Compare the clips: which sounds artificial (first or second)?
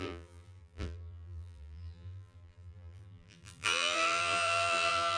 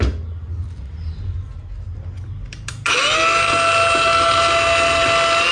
first